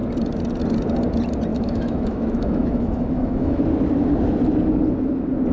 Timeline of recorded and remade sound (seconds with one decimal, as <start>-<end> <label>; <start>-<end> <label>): 0.0-1.5 recorded; 1.5-3.6 remade; 3.6-5.5 recorded